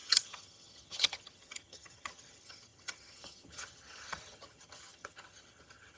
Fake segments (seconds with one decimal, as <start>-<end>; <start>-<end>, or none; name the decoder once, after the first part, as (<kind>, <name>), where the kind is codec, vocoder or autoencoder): 0.0-6.0 (vocoder, HiFi-GAN)

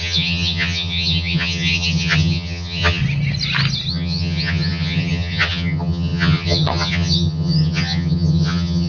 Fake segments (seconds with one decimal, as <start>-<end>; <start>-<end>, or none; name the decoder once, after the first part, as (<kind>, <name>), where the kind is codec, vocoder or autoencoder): 0.0-3.0 (vocoder, HiFi-GAN); 3.9-8.9